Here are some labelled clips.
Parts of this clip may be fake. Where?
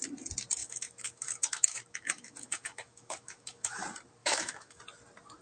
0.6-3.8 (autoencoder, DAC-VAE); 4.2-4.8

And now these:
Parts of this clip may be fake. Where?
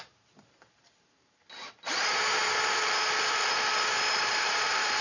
0.0-1.4 (vocoder, BigVGAN v2); 4.1-5.0